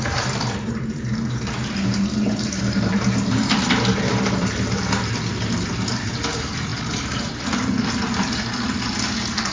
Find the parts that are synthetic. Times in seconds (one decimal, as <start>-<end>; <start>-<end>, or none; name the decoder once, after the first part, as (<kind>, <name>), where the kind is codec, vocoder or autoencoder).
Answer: 0.0-5.3 (vocoder, BigVGAN v2); 5.9-9.5